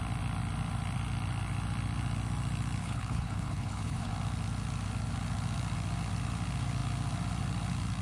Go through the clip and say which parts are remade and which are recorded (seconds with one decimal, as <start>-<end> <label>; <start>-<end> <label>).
0.0-2.8 recorded; 2.8-4.1 remade; 4.1-8.0 recorded